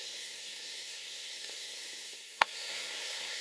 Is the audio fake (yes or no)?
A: yes